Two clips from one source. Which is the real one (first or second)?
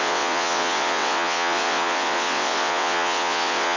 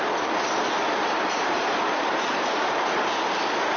second